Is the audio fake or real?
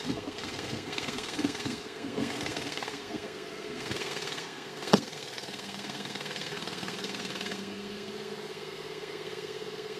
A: fake